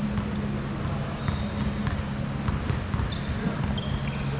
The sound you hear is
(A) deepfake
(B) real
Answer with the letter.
B